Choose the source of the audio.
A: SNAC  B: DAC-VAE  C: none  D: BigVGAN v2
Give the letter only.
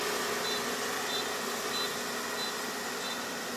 C